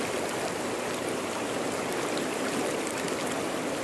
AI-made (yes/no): no